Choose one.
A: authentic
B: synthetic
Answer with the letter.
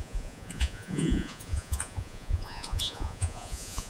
B